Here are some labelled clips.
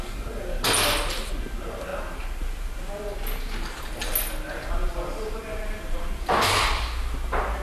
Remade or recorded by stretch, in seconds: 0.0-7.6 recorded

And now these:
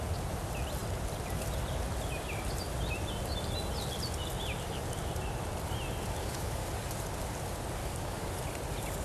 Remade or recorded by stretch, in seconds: 0.0-6.2 recorded; 6.2-6.7 remade; 6.7-7.8 recorded; 7.8-8.3 remade; 8.3-9.0 recorded

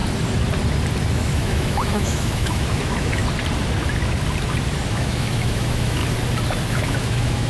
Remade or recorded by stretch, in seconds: 0.0-1.1 recorded; 1.1-3.2 remade; 3.2-4.9 recorded; 4.9-6.0 remade; 6.0-6.7 recorded; 6.7-7.5 remade

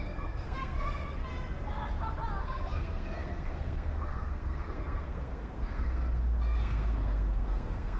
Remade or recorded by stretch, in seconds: 0.0-1.2 remade; 1.2-2.4 recorded; 2.4-8.0 remade

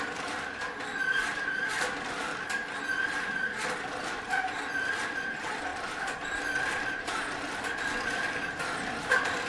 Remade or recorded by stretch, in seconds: 0.0-9.5 recorded

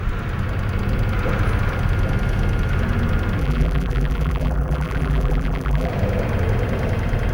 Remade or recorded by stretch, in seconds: 0.0-3.4 recorded; 3.4-5.9 remade; 5.9-7.3 recorded

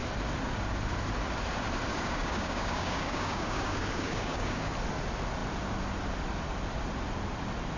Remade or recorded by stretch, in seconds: 0.0-1.9 recorded; 1.9-4.7 remade; 4.7-7.8 recorded